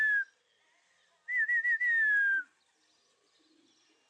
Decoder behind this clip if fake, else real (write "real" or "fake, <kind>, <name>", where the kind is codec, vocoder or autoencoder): real